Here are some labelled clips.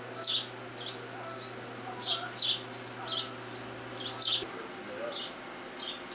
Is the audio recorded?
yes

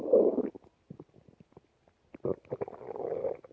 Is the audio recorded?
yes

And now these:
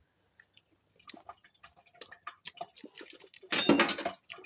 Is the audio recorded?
yes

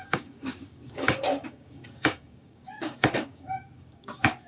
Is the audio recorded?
no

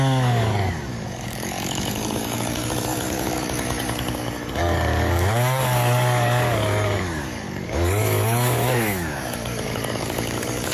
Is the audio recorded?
no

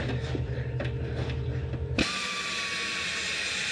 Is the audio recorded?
yes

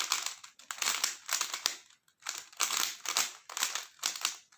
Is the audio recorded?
yes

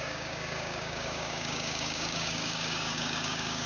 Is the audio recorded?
no